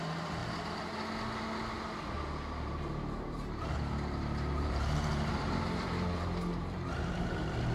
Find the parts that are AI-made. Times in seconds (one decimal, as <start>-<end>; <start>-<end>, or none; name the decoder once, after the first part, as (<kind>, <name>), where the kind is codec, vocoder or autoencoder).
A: 0.0-0.4 (vocoder, BigVGAN v2); 2.6-7.7